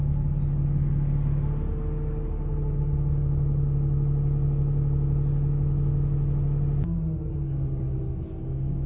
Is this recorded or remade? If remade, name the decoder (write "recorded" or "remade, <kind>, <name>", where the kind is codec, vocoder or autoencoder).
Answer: recorded